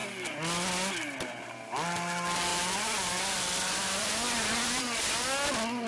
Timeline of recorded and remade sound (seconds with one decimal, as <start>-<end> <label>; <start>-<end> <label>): 0.0-5.9 recorded